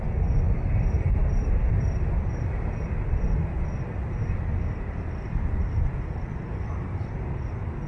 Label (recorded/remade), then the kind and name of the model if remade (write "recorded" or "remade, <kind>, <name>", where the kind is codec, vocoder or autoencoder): recorded